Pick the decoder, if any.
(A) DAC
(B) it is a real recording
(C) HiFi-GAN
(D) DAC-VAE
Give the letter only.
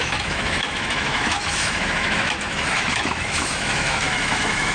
D